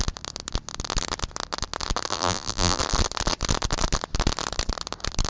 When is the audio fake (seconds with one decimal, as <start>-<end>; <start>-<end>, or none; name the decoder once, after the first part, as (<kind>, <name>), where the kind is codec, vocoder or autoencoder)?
2.1-2.8 (vocoder, BigVGAN v2)